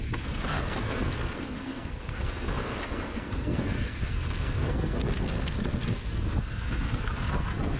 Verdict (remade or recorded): remade